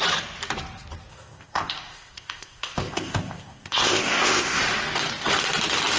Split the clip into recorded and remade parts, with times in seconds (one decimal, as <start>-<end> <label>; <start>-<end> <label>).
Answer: 0.0-1.1 recorded; 1.1-4.6 remade; 4.6-6.0 recorded